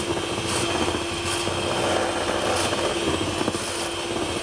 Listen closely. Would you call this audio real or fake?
real